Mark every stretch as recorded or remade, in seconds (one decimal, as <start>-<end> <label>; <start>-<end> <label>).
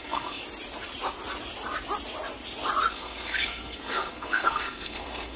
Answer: 0.0-0.4 remade; 0.4-2.9 recorded; 2.9-5.4 remade